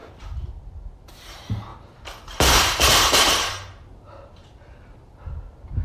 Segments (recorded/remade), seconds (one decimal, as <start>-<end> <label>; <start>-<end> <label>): 0.0-1.7 recorded; 1.7-5.2 remade; 5.2-5.8 recorded